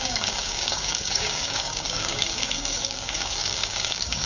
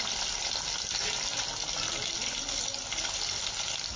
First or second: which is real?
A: second